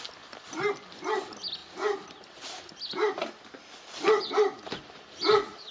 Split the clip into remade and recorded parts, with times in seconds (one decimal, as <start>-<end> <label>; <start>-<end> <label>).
0.0-5.7 recorded